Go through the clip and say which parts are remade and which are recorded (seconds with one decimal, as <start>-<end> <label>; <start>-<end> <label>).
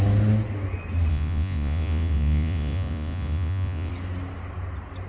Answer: 0.0-1.1 recorded; 1.1-3.9 remade; 3.9-5.1 recorded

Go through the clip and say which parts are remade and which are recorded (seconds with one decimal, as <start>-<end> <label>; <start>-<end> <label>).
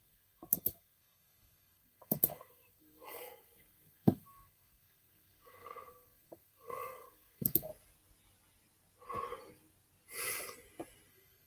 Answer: 0.0-7.7 remade; 7.7-11.1 recorded; 11.1-11.5 remade